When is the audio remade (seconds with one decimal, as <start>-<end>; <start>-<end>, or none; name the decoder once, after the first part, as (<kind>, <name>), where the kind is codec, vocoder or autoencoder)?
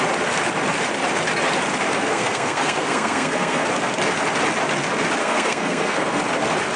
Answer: 2.0-3.7 (codec, SNAC); 5.2-6.2